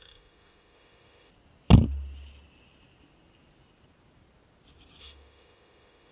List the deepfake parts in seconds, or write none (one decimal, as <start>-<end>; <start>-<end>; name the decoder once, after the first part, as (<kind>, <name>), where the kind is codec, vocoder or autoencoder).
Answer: 0.0-1.3 (autoencoder, DAC-VAE); 5.0-6.1